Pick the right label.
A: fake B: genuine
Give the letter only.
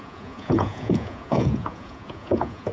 A